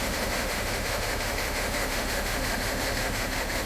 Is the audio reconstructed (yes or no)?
yes